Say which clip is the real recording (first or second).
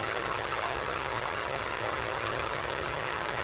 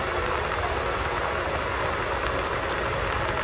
second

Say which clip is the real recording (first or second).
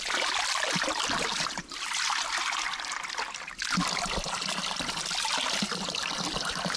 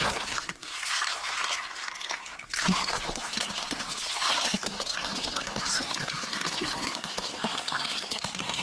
first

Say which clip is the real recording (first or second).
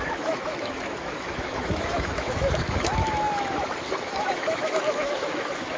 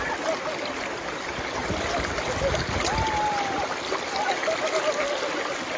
second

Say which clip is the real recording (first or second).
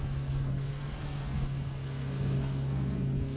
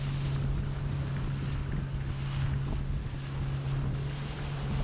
second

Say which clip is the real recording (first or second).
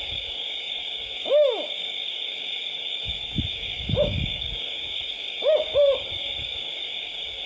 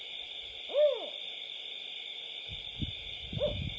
second